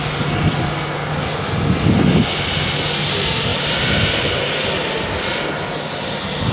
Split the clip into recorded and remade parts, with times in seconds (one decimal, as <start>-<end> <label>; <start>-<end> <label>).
0.0-3.5 recorded; 3.5-4.5 remade; 4.5-6.5 recorded